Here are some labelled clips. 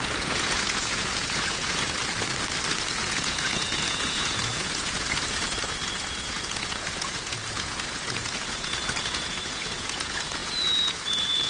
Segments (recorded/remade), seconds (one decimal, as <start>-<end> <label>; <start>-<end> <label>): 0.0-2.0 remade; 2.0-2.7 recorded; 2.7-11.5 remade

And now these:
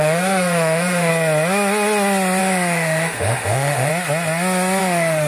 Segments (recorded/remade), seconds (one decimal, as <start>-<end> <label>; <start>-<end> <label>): 0.0-1.1 remade; 1.1-2.4 recorded; 2.4-3.9 remade; 3.9-4.8 recorded; 4.8-5.3 remade

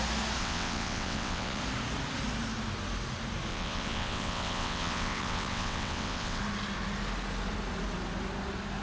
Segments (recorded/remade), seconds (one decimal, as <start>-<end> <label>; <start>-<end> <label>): 0.0-0.4 recorded; 0.4-1.6 remade; 1.6-3.5 recorded; 3.5-6.4 remade; 6.4-8.8 recorded

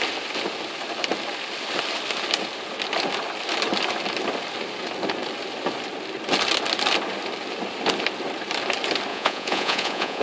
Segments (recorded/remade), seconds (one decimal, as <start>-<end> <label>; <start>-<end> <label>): 0.0-9.1 recorded; 9.1-10.2 remade

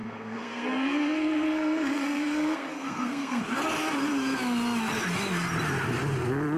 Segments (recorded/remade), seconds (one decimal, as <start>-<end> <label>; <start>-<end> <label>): 0.0-3.4 remade; 3.4-6.6 recorded

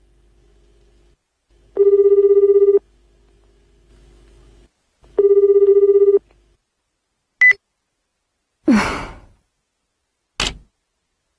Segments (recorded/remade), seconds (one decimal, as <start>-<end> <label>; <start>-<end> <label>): 0.0-11.4 recorded

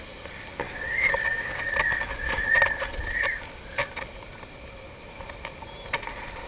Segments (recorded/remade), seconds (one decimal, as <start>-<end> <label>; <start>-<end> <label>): 0.0-0.5 recorded; 0.5-1.7 remade; 1.7-6.5 recorded